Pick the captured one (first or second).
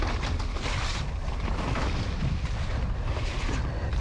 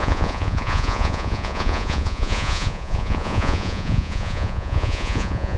first